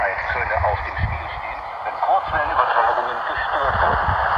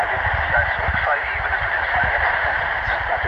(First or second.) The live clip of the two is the first